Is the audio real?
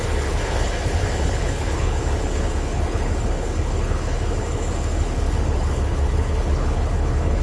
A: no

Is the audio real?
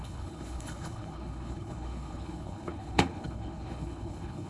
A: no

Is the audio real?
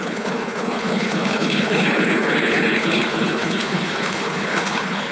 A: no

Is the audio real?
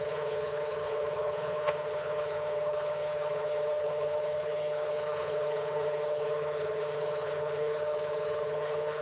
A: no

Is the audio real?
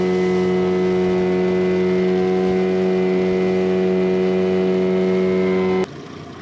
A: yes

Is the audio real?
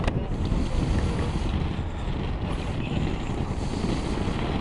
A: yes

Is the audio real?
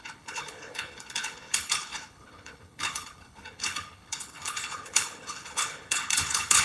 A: no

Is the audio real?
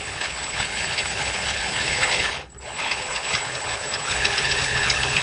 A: no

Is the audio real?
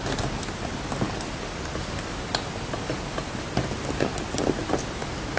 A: yes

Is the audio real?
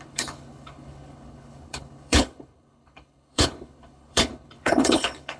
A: no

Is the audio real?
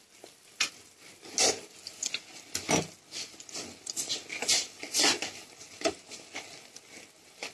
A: yes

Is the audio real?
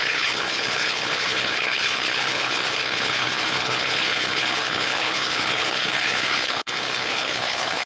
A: no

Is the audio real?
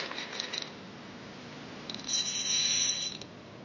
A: yes